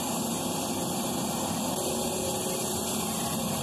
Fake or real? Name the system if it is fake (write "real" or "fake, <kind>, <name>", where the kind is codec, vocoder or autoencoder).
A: real